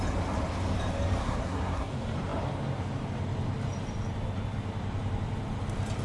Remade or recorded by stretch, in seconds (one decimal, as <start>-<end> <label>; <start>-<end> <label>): 0.0-1.2 recorded; 1.2-1.9 remade; 1.9-6.0 recorded